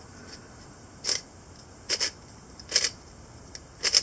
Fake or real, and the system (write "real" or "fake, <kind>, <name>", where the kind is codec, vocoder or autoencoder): real